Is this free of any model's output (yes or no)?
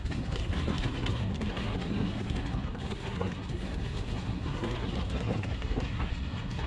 no